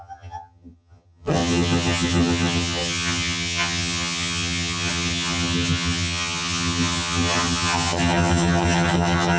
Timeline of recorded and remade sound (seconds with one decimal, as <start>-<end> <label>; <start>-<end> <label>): 0.0-9.4 remade